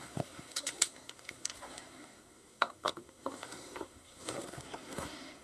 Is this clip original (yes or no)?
no